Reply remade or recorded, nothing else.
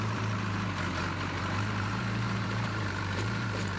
remade